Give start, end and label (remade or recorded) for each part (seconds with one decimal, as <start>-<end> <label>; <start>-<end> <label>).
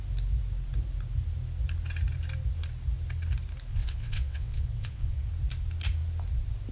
0.0-3.7 recorded; 3.7-5.3 remade; 5.3-6.7 recorded